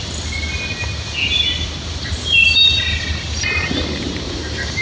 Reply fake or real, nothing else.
real